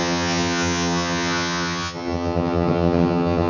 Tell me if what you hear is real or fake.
fake